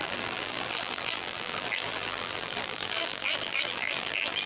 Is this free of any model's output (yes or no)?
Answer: no